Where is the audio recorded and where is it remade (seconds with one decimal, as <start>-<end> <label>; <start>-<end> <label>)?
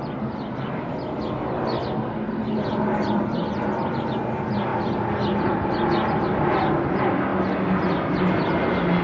0.0-9.0 recorded